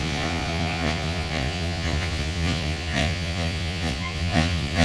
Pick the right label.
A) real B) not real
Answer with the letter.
B